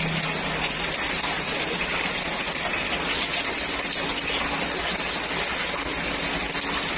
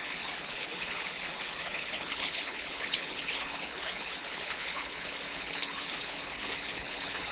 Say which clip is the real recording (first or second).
first